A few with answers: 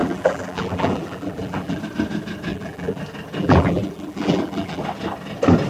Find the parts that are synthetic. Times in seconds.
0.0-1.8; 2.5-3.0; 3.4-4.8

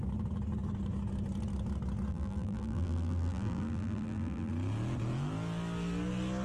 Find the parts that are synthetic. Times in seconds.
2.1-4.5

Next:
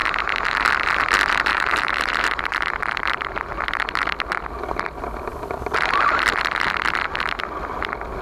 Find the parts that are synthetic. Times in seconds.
1.5-2.7

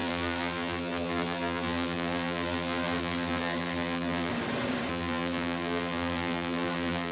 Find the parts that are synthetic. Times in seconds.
0.0-4.3; 4.9-7.1

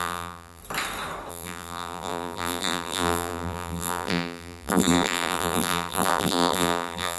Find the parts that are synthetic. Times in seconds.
0.0-0.6; 1.3-7.2

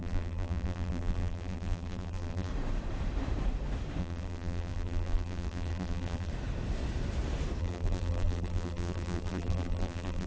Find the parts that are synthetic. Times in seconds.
0.0-2.5; 4.0-6.3; 7.6-10.3